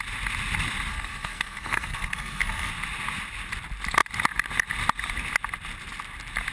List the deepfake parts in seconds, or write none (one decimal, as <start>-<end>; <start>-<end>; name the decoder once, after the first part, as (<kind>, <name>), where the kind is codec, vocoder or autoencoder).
0.9-2.7 (codec, SNAC)